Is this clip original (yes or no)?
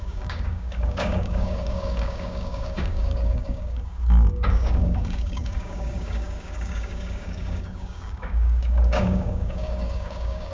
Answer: no